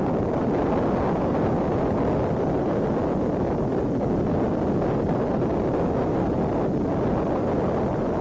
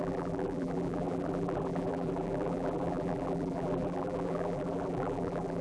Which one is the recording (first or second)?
first